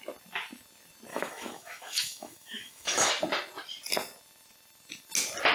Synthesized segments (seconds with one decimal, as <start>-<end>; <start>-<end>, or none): 1.1-3.1